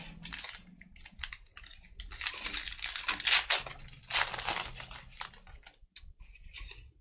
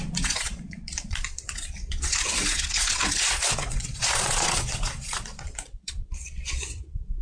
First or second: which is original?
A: first